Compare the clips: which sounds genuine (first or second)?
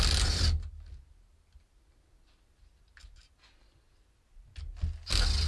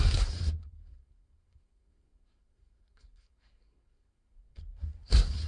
first